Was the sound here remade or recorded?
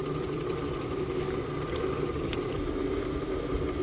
recorded